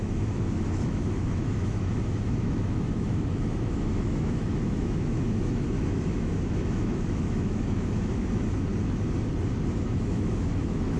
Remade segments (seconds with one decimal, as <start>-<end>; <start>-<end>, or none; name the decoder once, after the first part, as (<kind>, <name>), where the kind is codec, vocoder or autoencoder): 0.0-8.7 (autoencoder, DAC-VAE); 9.7-11.0